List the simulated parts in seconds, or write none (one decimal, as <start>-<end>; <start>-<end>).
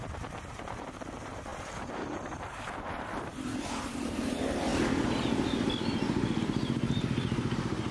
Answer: 0.0-4.7; 6.4-7.9